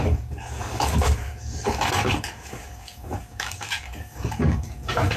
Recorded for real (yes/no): no